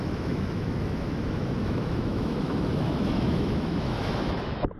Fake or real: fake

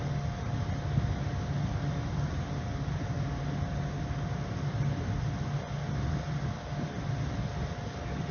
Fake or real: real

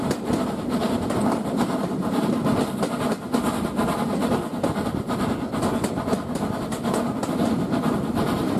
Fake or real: real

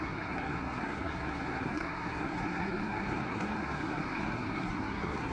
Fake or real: fake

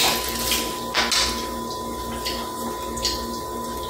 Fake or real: real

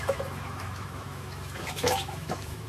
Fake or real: fake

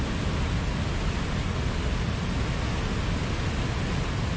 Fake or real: real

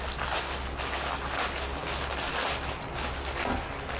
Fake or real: real